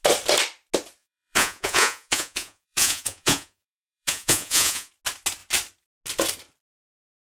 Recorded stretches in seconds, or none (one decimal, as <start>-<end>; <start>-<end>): 0.0-1.0; 4.9-7.2